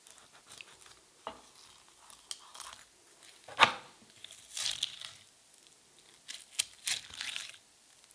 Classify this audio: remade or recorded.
recorded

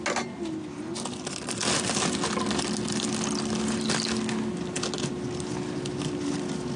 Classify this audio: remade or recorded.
recorded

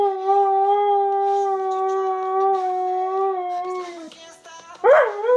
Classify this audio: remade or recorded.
recorded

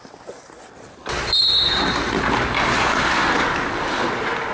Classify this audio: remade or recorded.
recorded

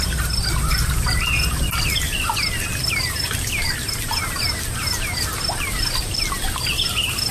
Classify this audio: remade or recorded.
recorded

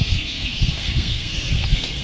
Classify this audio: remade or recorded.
remade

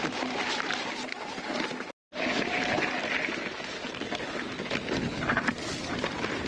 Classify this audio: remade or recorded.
recorded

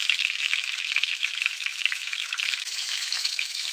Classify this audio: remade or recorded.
remade